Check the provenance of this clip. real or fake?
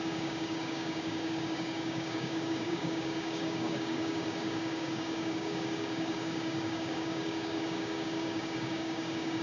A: fake